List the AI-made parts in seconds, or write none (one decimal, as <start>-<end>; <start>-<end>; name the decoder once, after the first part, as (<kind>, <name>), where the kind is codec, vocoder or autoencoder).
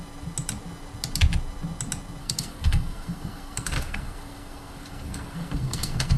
2.2-6.2 (codec, SNAC)